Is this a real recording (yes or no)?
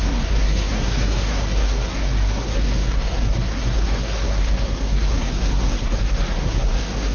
no